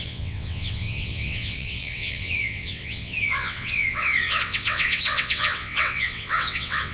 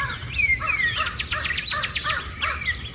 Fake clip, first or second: first